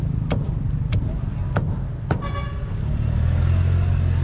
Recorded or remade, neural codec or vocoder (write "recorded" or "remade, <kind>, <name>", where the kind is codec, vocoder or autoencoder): recorded